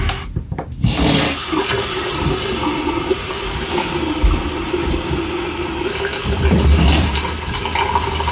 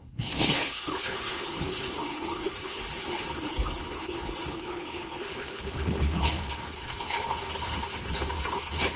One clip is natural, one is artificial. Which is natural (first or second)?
first